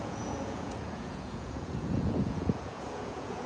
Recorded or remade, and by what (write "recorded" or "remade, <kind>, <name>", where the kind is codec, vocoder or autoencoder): remade, vocoder, Vocos